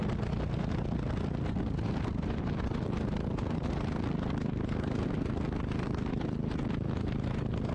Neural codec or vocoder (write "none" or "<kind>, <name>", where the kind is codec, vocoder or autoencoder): none